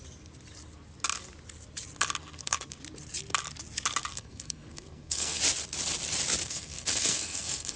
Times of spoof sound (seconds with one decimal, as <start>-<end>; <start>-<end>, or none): 2.2-2.8; 4.1-5.4; 6.4-7.8